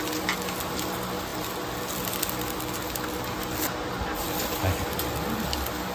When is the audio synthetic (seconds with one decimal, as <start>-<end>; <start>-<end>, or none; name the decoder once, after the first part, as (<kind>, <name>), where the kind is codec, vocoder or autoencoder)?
none